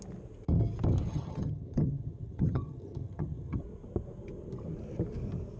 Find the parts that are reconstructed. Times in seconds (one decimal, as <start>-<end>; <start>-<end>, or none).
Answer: 1.1-3.6